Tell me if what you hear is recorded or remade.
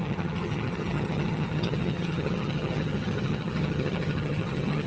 remade